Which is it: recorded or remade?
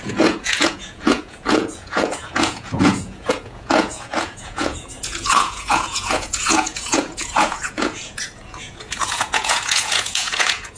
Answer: remade